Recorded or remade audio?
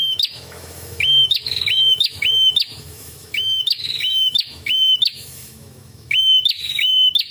remade